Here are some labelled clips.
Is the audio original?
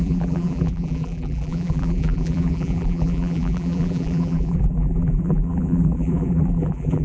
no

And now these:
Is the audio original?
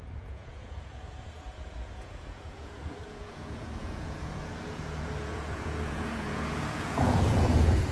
no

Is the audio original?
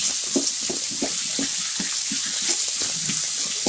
yes